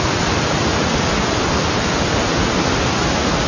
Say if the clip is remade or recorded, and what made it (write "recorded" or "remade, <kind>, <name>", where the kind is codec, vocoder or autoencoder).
recorded